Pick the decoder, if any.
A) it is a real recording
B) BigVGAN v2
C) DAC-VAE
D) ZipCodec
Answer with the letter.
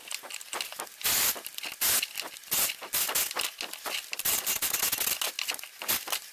A